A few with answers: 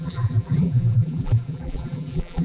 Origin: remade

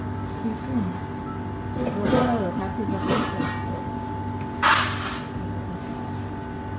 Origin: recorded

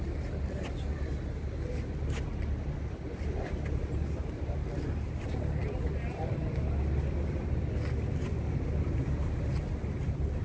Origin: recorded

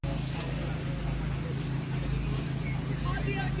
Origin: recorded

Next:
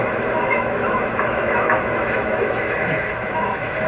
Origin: remade